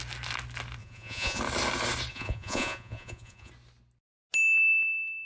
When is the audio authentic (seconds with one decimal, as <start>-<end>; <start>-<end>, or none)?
0.0-0.8; 1.4-2.1; 3.5-5.3

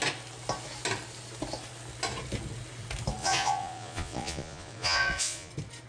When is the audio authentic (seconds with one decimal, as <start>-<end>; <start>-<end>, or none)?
0.0-3.2; 5.5-5.9